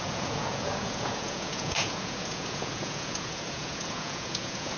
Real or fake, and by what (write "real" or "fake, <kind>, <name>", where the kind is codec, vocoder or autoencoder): fake, vocoder, Vocos